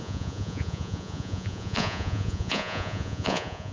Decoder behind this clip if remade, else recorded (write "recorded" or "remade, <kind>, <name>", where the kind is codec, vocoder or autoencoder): remade, vocoder, Vocos